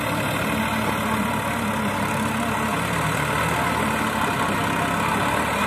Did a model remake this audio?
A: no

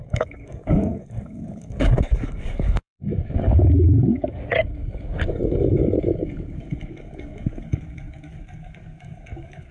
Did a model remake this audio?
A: yes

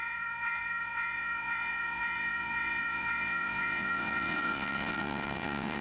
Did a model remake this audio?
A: yes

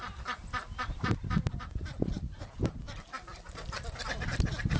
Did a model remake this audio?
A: no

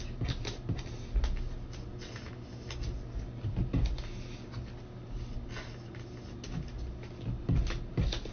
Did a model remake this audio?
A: no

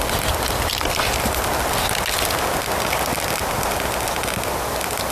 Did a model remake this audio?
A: no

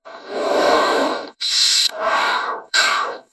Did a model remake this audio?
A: yes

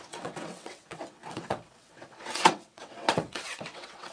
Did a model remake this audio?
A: yes